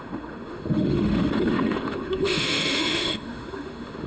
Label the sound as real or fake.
fake